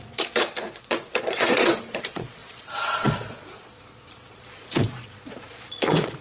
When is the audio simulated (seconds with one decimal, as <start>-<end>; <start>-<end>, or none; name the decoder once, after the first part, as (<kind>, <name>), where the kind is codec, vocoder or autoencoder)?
0.0-6.2 (vocoder, Vocos)